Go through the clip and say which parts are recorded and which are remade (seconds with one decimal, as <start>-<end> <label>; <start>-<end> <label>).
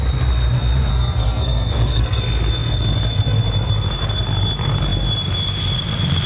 0.0-0.9 recorded; 0.9-2.2 remade; 2.2-6.3 recorded